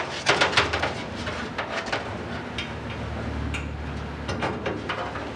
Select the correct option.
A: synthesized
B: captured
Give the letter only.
B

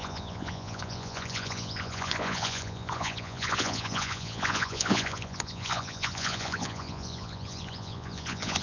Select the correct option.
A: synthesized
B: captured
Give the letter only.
A